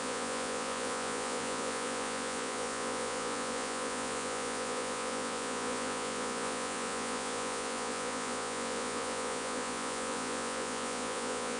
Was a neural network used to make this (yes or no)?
yes